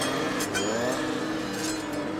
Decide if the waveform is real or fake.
real